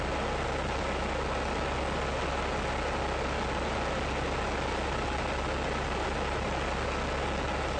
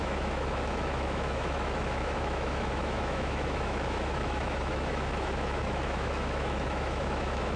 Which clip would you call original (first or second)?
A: first